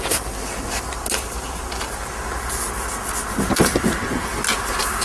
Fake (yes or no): no